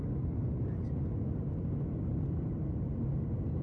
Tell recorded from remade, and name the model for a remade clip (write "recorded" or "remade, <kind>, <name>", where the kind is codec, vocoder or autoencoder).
recorded